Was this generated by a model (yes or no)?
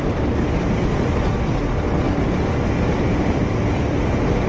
no